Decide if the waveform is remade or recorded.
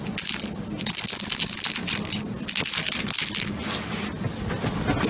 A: recorded